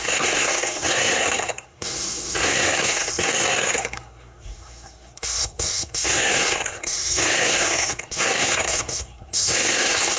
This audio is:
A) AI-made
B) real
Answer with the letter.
A